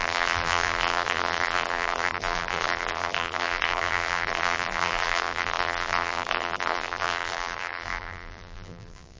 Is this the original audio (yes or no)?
no